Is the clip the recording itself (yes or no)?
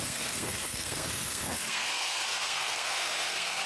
no